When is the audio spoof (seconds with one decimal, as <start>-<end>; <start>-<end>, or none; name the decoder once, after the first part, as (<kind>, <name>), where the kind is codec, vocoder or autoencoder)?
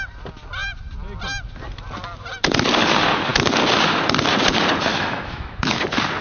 4.9-5.8 (autoencoder, DAC-VAE)